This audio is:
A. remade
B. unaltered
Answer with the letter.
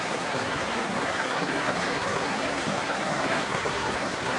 A